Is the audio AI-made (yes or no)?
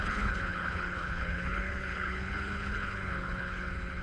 yes